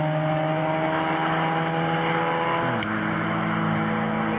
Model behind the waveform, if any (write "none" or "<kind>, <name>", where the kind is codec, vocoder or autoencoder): none